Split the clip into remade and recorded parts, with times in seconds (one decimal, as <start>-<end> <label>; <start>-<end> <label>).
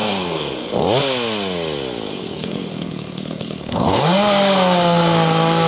0.0-0.7 remade; 0.7-2.1 recorded; 2.1-5.7 remade